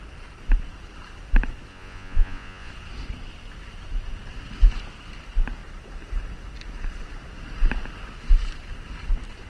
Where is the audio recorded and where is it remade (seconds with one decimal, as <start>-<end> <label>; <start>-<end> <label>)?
0.0-1.7 recorded; 1.7-2.7 remade; 2.7-9.5 recorded